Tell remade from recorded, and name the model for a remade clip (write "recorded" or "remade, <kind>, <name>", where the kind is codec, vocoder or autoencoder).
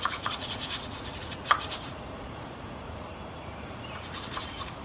remade, vocoder, Vocos